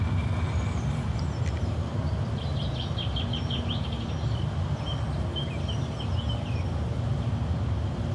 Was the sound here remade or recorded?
recorded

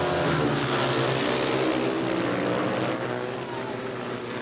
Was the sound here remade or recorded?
recorded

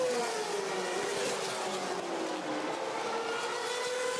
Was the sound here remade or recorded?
recorded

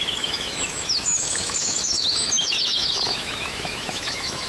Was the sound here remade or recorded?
remade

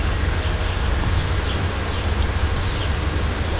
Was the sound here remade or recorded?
recorded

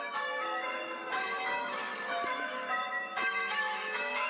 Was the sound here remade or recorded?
remade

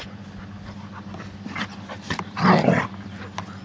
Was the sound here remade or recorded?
recorded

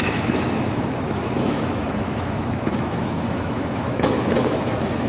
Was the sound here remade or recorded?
remade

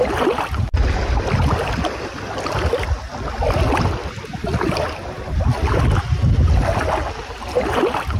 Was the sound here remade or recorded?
recorded